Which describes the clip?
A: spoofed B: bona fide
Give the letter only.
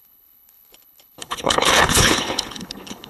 A